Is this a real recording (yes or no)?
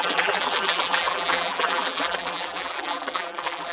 no